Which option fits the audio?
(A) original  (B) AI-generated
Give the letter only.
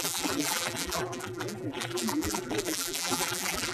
B